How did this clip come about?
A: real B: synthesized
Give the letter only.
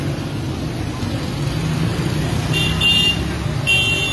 A